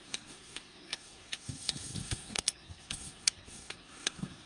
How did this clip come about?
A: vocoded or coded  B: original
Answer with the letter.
A